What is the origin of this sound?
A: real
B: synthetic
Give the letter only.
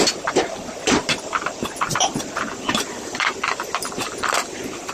B